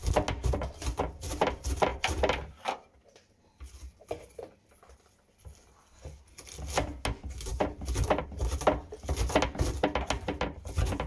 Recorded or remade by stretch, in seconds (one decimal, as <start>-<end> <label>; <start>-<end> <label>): 0.0-11.1 recorded